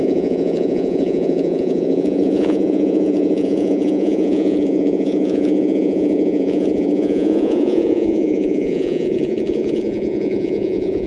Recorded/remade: remade